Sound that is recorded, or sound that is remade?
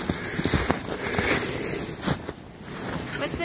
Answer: recorded